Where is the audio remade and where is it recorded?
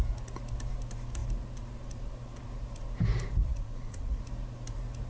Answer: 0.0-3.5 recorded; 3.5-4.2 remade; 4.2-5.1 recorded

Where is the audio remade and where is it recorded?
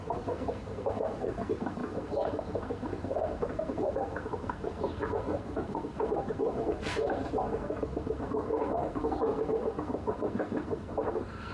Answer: 0.0-11.5 remade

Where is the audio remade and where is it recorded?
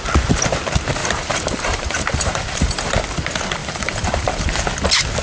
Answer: 0.0-1.0 recorded; 1.0-2.9 remade; 2.9-3.6 recorded; 3.6-4.5 remade; 4.5-5.2 recorded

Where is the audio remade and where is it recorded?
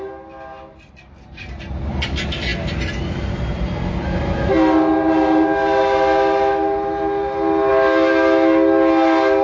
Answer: 0.0-9.4 recorded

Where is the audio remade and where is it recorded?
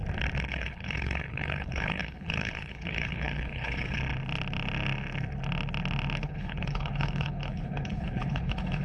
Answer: 0.0-0.5 recorded; 0.5-4.0 remade; 4.0-6.2 recorded; 6.2-8.8 remade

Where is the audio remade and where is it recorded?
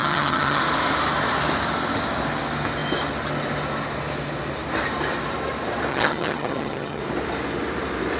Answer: 0.0-0.6 remade; 0.6-5.9 recorded; 5.9-7.0 remade; 7.0-8.2 recorded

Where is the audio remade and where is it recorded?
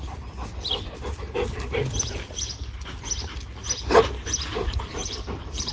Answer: 0.0-5.0 recorded; 5.0-5.7 remade